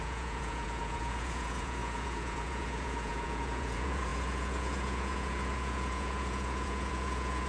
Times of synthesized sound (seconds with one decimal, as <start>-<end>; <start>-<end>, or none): 0.0-7.5